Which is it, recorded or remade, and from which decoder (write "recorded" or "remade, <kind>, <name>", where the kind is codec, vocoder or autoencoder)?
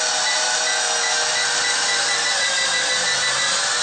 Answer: recorded